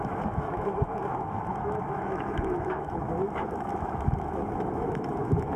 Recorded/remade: remade